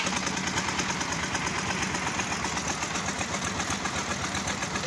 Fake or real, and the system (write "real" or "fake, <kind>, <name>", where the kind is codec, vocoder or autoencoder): real